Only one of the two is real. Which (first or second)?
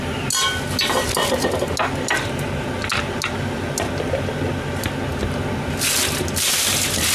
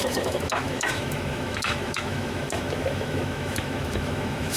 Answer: first